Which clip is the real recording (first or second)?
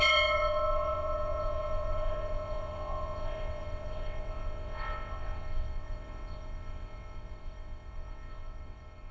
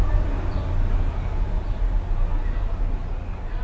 second